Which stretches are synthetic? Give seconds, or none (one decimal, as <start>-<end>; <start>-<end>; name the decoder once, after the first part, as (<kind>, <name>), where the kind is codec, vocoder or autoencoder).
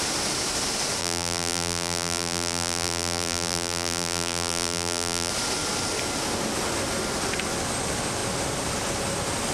1.0-5.3 (vocoder, BigVGAN v2)